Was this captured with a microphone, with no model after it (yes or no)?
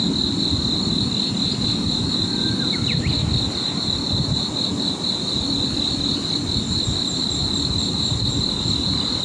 yes